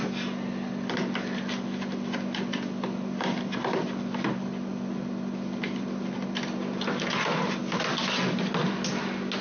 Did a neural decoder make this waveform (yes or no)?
no